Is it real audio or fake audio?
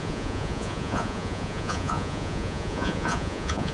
fake